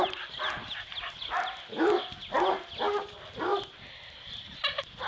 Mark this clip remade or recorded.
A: recorded